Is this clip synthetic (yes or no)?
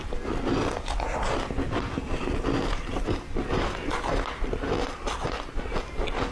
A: no